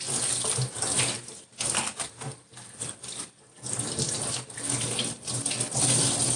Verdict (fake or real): real